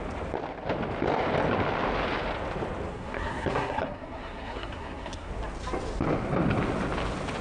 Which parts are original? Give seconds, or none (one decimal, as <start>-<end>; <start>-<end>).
0.0-2.9; 5.3-7.4